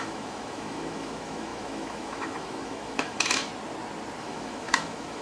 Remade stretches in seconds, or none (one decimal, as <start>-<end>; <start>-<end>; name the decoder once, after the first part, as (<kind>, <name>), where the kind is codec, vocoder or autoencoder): 0.0-3.5 (autoencoder, DAC-VAE); 4.2-5.2

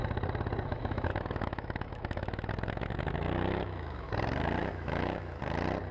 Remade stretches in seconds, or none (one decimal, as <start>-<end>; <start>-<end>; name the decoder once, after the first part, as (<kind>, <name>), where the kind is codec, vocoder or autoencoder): 0.7-4.1 (autoencoder, DAC-VAE); 4.6-5.4